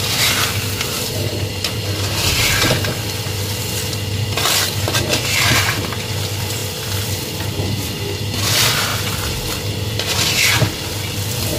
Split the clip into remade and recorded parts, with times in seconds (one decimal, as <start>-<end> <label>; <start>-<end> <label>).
0.0-8.9 recorded; 8.9-10.3 remade; 10.3-11.6 recorded